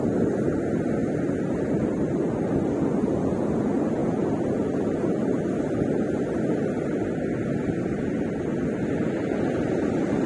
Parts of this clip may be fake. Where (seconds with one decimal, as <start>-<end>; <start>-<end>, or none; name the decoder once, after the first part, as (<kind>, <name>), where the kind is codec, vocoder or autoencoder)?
none